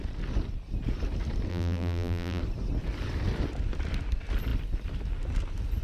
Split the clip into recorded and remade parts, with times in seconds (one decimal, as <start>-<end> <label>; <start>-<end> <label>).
0.0-1.5 recorded; 1.5-2.4 remade; 2.4-5.8 recorded